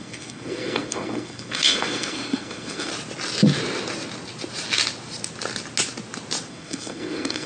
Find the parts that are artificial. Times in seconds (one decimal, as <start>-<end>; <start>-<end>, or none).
0.0-2.9; 6.5-7.5